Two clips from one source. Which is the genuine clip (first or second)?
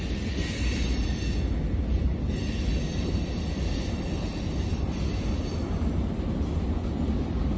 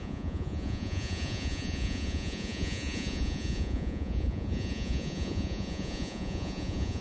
first